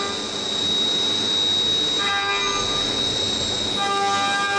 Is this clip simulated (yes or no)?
no